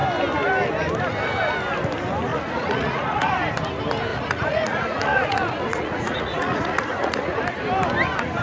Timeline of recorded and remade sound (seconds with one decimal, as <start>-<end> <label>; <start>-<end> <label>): 0.0-2.3 recorded; 2.3-3.3 remade; 3.3-4.1 recorded; 4.1-7.4 remade; 7.4-8.4 recorded